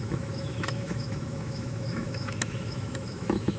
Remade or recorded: remade